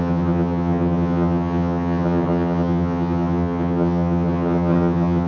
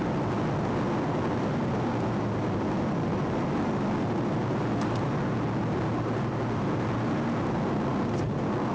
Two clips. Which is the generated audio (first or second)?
first